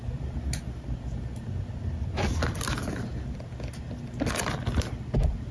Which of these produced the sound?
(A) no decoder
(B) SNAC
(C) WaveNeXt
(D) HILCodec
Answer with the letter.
A